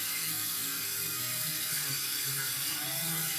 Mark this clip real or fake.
fake